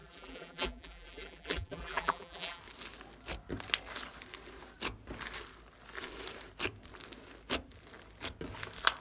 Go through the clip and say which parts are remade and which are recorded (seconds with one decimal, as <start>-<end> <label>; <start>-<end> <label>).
0.0-2.6 remade; 2.6-9.0 recorded